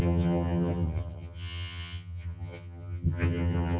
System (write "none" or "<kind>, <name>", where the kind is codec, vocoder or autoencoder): vocoder, HiFi-GAN